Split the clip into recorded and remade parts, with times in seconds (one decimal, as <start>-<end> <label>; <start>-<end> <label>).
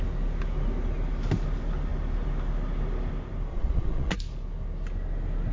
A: 0.0-3.5 recorded; 3.5-4.1 remade; 4.1-5.5 recorded